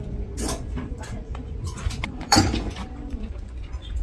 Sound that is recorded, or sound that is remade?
remade